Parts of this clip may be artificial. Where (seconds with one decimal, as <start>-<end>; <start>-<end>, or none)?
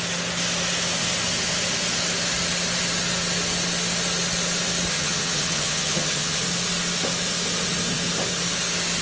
4.9-6.4